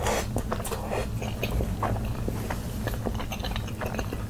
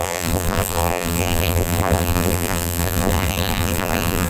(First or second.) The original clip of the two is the first